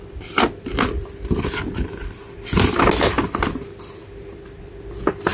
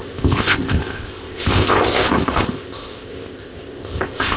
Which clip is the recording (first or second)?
first